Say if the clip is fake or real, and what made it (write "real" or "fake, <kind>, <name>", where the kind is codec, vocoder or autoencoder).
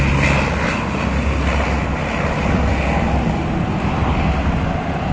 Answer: real